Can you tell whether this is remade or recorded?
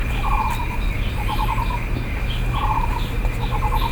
recorded